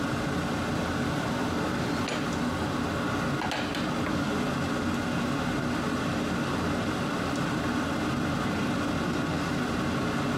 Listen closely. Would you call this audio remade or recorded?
recorded